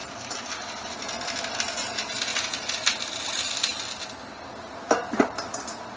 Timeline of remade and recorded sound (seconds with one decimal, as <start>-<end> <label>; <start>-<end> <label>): 0.0-6.0 recorded